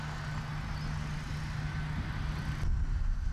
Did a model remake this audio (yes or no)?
no